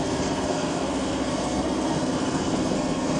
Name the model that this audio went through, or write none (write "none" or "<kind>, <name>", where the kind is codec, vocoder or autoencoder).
codec, SNAC